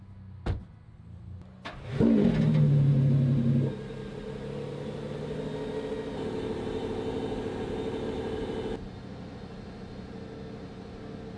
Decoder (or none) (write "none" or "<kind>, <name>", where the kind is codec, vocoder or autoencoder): none